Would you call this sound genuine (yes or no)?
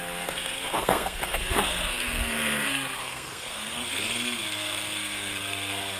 no